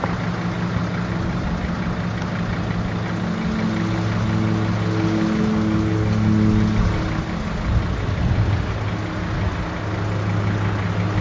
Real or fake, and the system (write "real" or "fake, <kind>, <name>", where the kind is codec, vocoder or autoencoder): real